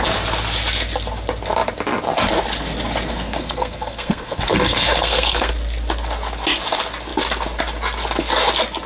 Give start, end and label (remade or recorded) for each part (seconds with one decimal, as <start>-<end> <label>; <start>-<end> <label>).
0.0-3.1 recorded; 3.1-5.5 remade; 5.5-8.9 recorded